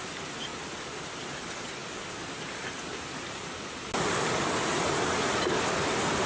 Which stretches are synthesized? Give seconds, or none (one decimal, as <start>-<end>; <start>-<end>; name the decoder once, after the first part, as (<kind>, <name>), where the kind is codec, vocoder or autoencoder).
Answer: none